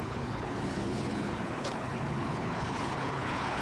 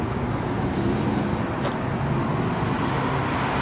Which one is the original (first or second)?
second